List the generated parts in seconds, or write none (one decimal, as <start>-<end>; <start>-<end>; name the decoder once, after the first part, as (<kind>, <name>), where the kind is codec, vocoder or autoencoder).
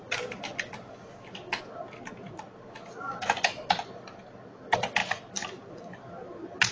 none